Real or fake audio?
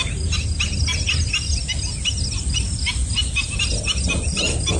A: real